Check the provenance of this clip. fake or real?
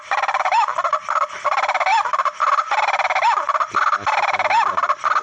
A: real